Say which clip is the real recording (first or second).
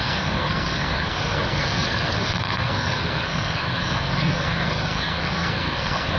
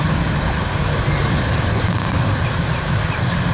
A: second